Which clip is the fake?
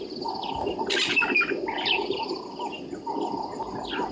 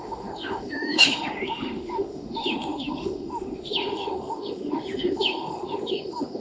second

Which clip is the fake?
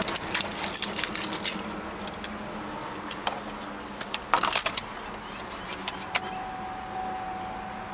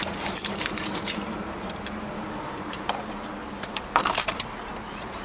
second